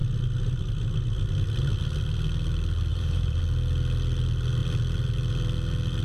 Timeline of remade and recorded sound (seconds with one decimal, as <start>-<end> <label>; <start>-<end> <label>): 0.0-2.9 recorded; 2.9-3.4 remade; 3.4-6.0 recorded